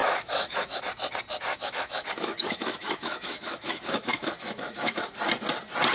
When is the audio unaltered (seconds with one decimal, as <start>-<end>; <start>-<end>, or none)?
0.8-1.5; 5.0-5.9